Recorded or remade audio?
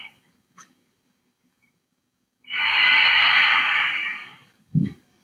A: remade